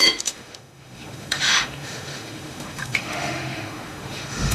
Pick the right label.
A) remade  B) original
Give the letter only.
A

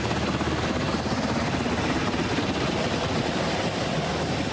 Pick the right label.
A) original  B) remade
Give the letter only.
A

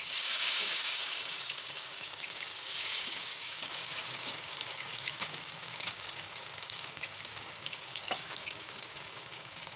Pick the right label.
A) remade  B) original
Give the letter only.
A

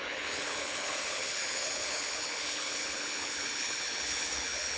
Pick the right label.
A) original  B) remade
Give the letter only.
B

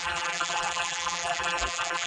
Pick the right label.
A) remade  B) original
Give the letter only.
A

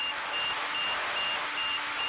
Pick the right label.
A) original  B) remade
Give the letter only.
A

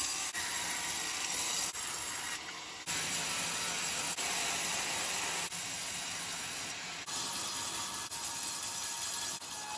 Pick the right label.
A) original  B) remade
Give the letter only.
A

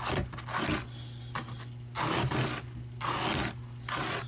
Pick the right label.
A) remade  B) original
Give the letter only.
B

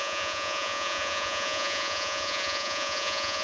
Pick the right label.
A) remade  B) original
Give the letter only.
A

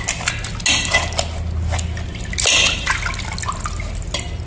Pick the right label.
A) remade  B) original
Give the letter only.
B